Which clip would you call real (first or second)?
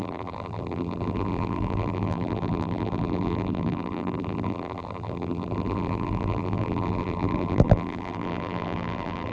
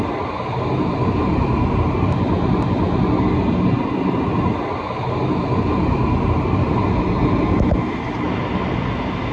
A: second